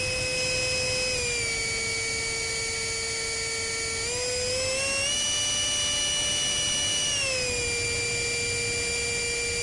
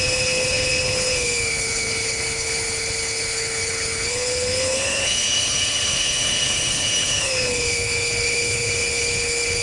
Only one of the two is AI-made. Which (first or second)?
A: second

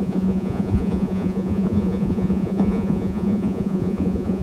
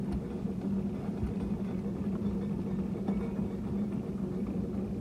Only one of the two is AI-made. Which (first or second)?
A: first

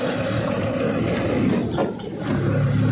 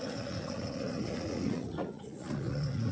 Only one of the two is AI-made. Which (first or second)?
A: second